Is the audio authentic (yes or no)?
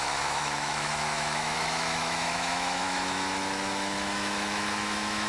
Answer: no